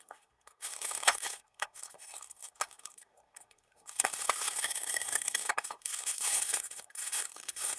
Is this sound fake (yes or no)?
yes